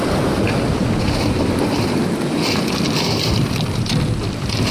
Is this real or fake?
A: real